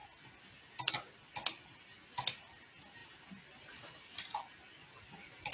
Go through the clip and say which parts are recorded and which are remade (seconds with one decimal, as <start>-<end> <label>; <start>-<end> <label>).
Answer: 0.0-3.0 recorded; 3.0-4.4 remade; 4.4-5.5 recorded